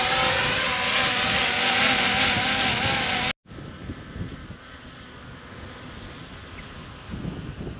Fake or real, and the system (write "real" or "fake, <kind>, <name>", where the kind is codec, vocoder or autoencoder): real